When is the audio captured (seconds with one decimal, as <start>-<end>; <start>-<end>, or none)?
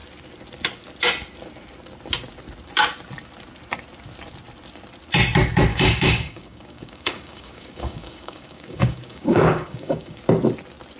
0.0-5.7; 10.2-11.0